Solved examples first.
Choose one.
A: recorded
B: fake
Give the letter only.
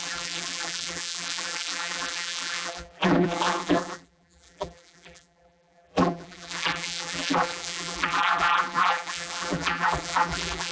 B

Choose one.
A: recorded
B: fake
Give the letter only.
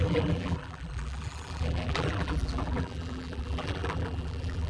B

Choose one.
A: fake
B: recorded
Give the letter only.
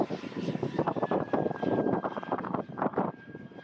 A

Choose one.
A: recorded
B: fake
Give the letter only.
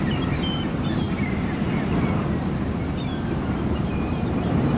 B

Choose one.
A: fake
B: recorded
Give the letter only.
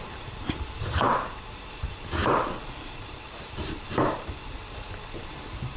A